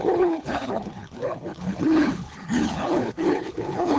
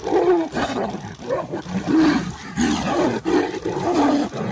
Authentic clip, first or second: second